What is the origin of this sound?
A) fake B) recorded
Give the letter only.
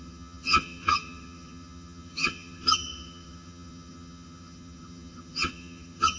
A